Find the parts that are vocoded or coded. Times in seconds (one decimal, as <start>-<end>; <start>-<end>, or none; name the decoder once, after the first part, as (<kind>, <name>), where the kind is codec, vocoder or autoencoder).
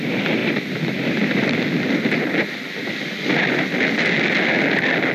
none